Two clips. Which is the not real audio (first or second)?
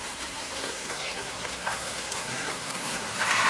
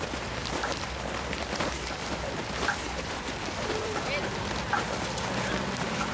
first